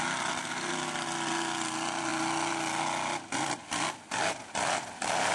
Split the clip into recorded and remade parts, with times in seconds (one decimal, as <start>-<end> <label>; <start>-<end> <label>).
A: 0.0-5.3 recorded